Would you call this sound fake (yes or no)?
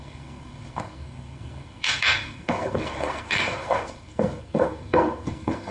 yes